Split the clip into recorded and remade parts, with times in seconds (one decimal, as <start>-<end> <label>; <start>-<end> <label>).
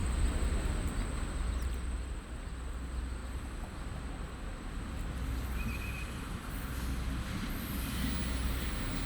0.0-9.1 recorded